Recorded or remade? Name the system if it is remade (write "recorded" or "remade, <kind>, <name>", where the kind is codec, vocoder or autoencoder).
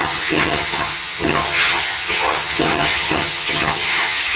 remade, vocoder, HiFi-GAN